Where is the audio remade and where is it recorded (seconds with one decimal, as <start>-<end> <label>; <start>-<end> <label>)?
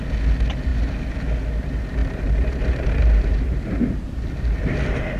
0.0-2.0 recorded; 2.0-4.1 remade; 4.1-5.2 recorded